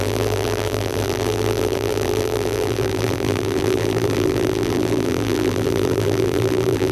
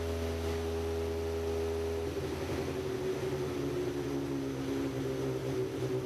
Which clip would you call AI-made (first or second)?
first